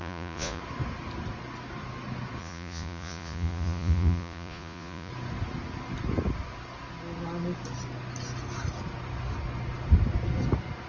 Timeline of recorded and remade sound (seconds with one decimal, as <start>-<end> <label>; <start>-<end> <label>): 0.0-0.6 remade; 0.6-2.4 recorded; 2.4-5.1 remade; 5.1-10.9 recorded